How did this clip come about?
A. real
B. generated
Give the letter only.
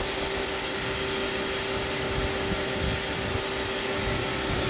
A